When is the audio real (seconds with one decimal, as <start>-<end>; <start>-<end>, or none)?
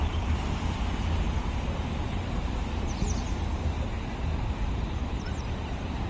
none